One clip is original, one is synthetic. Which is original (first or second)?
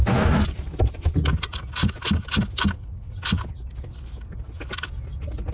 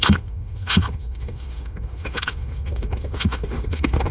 first